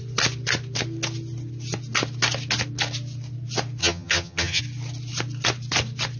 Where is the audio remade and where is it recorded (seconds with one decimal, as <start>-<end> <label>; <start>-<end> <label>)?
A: 0.0-3.8 recorded; 3.8-4.6 remade; 4.6-6.2 recorded